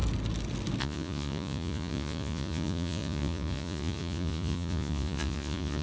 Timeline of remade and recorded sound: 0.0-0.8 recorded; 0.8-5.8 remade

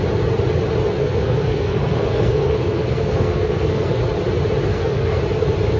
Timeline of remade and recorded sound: 0.0-1.0 recorded; 1.0-4.0 remade; 4.0-4.7 recorded; 4.7-5.2 remade; 5.2-5.8 recorded

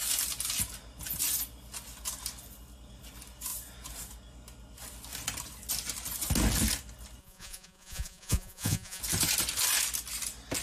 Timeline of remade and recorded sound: 0.0-7.2 recorded; 7.2-9.0 remade; 9.0-10.6 recorded

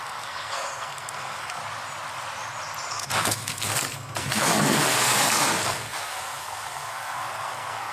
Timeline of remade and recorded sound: 0.0-1.6 remade; 1.6-2.9 recorded; 2.9-7.9 remade

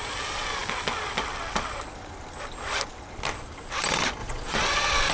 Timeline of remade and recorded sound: 0.0-4.2 recorded; 4.2-5.1 remade